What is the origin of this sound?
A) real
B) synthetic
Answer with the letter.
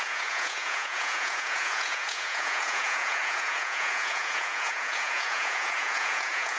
B